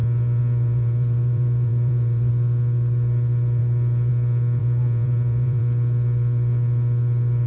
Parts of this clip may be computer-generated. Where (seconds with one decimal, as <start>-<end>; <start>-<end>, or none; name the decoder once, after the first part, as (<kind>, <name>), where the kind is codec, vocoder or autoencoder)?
0.0-2.3 (vocoder, Vocos); 4.6-5.6